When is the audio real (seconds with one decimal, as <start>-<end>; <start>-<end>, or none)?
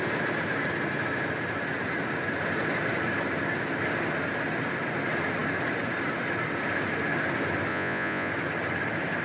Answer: 0.0-7.7; 8.3-9.2